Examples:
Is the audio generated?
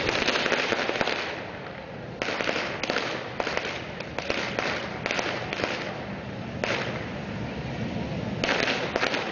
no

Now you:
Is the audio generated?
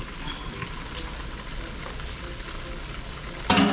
no